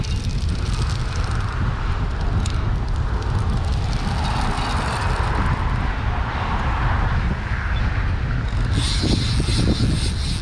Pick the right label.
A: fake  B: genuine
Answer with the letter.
B